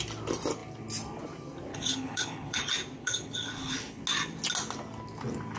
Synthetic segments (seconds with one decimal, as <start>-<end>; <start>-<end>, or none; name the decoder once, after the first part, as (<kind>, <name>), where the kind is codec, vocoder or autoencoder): 1.7-2.6 (codec, HILCodec); 3.0-4.0